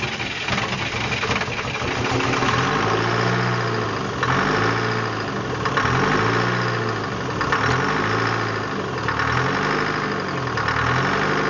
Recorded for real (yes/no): yes